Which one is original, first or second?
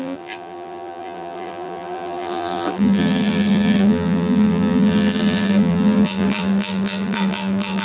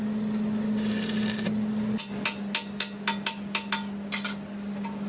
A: second